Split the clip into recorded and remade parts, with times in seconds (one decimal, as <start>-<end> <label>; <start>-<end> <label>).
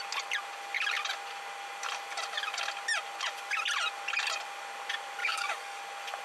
0.0-5.2 recorded; 5.2-5.8 remade; 5.8-6.2 recorded